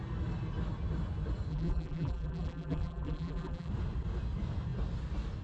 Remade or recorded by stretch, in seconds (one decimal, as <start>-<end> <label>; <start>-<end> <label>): 0.0-1.5 recorded; 1.5-3.7 remade; 3.7-5.4 recorded